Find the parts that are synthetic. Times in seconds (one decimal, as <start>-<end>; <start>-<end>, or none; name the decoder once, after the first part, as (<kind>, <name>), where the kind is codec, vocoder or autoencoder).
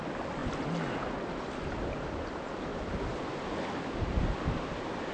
none